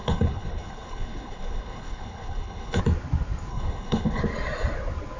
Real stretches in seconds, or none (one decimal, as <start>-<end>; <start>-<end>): 2.8-3.5; 4.2-5.2